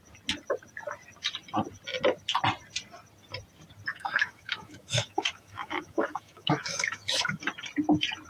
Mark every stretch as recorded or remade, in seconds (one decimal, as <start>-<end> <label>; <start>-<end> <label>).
0.0-3.9 recorded; 3.9-7.4 remade; 7.4-8.3 recorded